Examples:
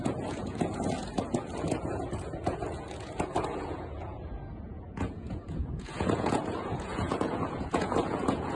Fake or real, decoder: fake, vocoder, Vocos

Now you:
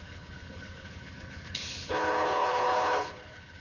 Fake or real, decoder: fake, codec, HILCodec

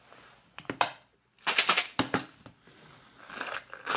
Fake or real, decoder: real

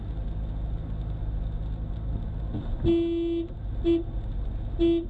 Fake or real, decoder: real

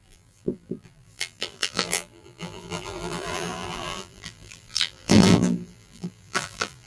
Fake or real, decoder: fake, vocoder, BigVGAN v2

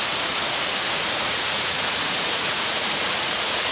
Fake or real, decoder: fake, vocoder, Vocos